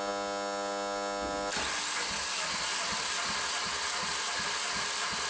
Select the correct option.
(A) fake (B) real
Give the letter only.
B